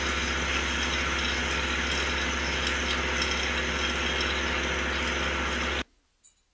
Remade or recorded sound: recorded